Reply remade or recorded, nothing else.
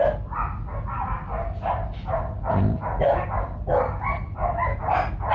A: recorded